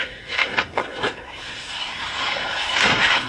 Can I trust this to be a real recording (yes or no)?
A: no